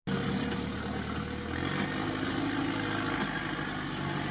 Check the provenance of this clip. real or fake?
real